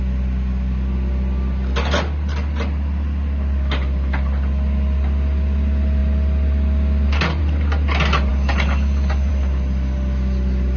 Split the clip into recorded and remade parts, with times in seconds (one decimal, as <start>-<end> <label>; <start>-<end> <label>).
0.0-10.8 recorded